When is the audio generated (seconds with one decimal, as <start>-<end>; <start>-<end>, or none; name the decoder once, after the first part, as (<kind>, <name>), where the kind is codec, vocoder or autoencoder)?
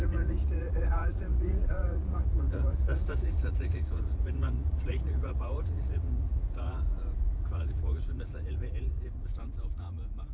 0.0-10.3 (vocoder, Vocos)